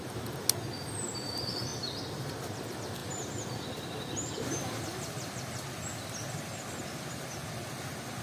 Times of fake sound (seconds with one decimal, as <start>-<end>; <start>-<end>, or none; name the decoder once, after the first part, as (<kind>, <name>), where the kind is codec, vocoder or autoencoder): none